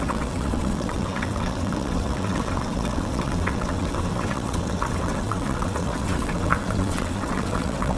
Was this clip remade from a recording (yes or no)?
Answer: yes